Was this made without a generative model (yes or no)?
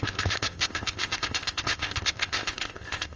no